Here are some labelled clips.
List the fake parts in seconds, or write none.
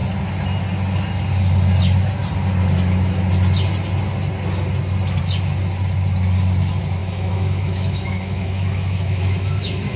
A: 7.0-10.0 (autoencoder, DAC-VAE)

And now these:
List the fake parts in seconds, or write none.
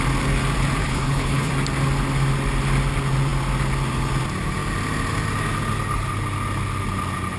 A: 0.8-1.5 (codec, HILCodec)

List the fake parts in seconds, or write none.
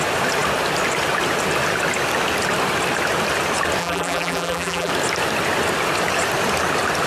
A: 3.8-4.9 (vocoder, BigVGAN v2)